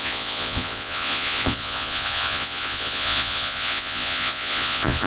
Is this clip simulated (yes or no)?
yes